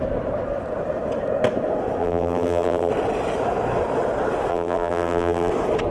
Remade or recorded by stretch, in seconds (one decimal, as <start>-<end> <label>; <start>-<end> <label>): 0.0-2.0 recorded; 2.0-2.9 remade; 2.9-4.5 recorded; 4.5-5.5 remade; 5.5-5.9 recorded